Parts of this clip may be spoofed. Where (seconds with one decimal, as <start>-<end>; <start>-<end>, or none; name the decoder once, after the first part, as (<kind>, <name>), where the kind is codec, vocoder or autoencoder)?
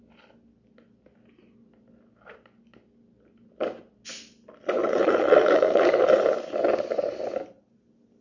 4.8-5.9 (vocoder, Vocos)